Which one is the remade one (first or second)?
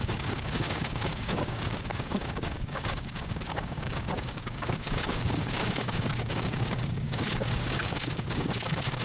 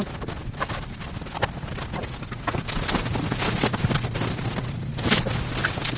first